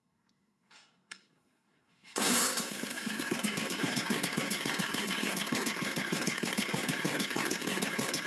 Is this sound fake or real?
fake